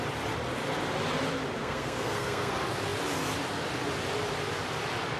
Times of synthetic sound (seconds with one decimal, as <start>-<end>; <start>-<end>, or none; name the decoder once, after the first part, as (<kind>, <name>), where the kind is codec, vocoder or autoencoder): 1.6-2.5 (codec, SNAC)

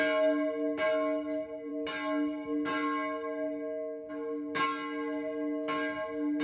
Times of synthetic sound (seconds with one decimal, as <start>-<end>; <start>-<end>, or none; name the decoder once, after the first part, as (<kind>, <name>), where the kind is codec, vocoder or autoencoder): none

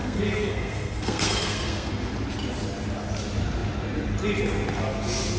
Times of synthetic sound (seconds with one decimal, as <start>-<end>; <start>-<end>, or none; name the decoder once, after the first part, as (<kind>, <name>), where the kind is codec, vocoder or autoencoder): 0.0-1.9 (codec, SNAC)

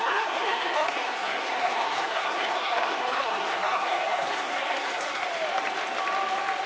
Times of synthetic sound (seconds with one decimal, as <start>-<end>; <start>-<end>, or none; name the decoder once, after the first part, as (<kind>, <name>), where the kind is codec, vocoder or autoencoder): 0.0-5.3 (codec, SNAC)

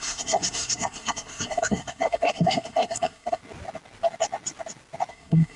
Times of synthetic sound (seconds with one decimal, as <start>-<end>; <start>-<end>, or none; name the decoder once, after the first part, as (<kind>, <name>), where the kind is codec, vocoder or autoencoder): 0.0-3.4 (codec, SNAC); 5.1-5.6

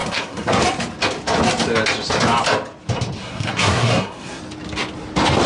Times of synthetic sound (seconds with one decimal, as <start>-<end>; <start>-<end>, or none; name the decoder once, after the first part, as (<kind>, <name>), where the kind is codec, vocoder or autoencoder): 0.0-0.6 (codec, SNAC); 3.2-4.4